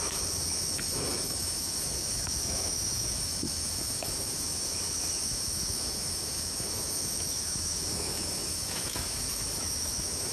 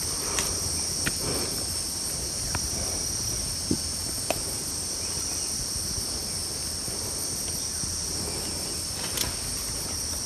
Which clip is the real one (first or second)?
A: second